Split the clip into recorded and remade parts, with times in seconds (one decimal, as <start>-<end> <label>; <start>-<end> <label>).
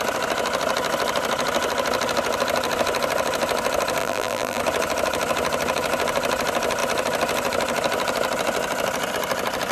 0.0-4.0 recorded; 4.0-4.6 remade; 4.6-9.7 recorded